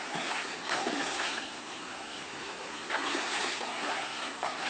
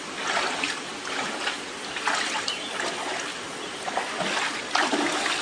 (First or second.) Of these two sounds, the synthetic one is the first